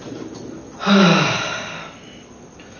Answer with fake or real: real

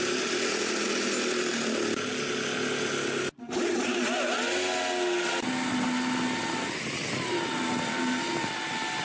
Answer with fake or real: real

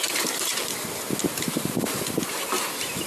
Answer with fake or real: real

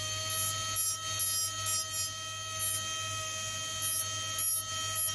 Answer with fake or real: real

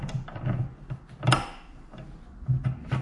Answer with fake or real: real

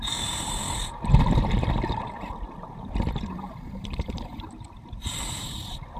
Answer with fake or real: fake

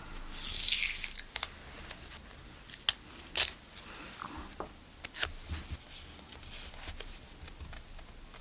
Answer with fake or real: real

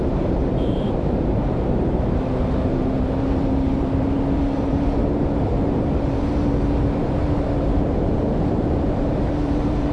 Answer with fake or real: fake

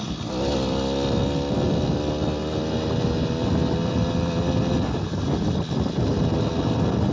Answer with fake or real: real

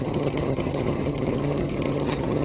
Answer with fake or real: fake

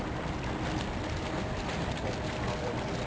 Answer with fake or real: real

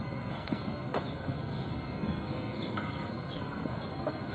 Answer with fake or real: fake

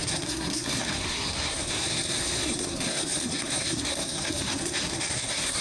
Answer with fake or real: fake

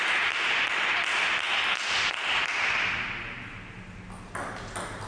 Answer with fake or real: real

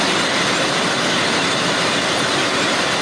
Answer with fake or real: real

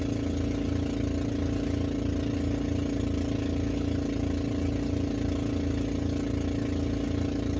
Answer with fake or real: real